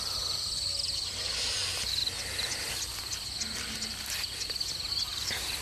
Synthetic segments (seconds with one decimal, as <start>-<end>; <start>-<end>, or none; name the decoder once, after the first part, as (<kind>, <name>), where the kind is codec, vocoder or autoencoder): none